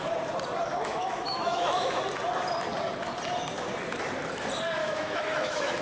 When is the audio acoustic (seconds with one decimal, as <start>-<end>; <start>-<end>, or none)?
0.0-0.7; 2.0-4.8